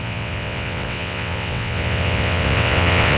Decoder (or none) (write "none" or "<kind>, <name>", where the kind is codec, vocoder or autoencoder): vocoder, WaveNeXt